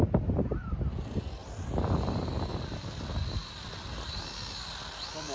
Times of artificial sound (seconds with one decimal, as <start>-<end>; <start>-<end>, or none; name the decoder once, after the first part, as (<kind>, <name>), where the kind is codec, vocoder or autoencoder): none